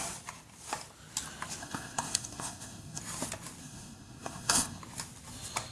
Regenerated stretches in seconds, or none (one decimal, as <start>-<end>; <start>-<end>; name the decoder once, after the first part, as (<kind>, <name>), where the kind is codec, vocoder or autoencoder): 1.6-3.0 (codec, SNAC); 3.6-4.8